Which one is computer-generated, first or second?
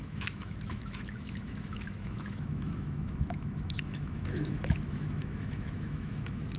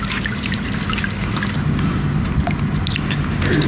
first